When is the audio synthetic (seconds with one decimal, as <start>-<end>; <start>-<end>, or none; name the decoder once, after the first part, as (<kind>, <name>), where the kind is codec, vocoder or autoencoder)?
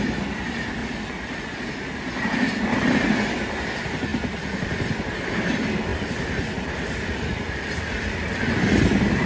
0.8-1.4 (vocoder, BigVGAN v2); 4.1-5.0; 5.9-8.6